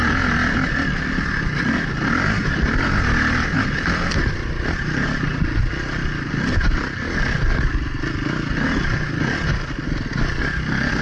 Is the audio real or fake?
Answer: real